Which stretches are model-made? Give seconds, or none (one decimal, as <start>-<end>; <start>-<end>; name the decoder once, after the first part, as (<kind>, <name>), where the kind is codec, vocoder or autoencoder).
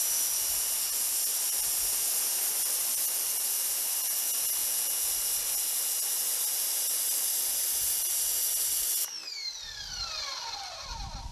4.6-5.1 (vocoder, Vocos)